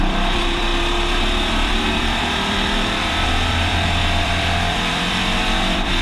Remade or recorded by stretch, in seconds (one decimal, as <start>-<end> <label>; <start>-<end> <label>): 0.0-0.7 remade; 0.7-1.5 recorded; 1.5-6.0 remade